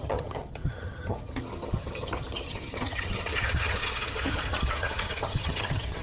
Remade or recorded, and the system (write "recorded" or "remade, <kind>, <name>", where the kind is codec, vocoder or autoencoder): remade, vocoder, HiFi-GAN